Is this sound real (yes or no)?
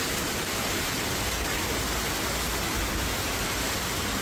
yes